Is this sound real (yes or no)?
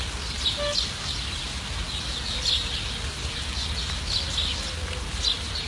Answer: yes